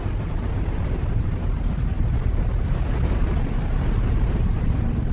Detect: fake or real fake